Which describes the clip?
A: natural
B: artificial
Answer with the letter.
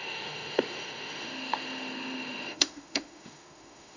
B